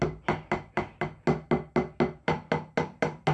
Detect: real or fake real